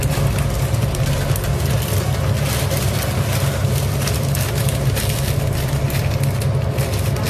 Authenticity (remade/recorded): recorded